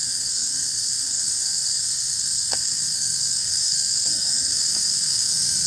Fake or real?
fake